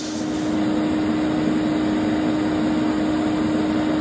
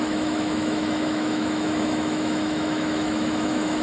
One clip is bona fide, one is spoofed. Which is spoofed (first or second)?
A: second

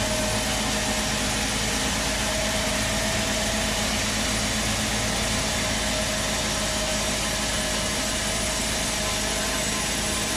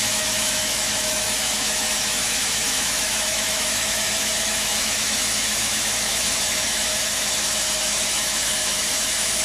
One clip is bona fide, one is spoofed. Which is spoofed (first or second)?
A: second